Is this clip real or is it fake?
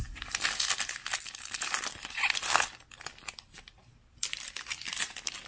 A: real